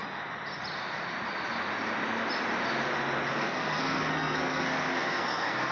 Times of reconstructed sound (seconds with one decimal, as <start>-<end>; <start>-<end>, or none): 3.3-5.7

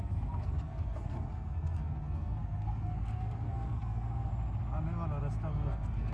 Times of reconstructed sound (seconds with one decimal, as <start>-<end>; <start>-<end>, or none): 0.0-4.3; 5.5-6.1

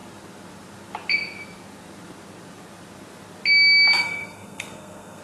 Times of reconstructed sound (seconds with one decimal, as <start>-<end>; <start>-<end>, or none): 4.0-5.2

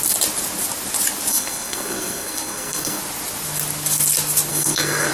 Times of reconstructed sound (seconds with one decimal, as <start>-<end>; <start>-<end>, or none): 1.3-3.0; 4.5-5.1